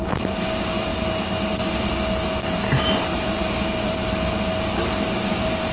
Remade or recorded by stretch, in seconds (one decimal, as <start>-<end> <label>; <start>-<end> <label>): 0.0-3.1 recorded; 3.1-4.1 remade; 4.1-5.7 recorded